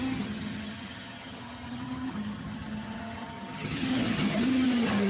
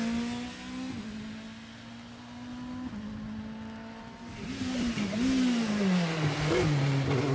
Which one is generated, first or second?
first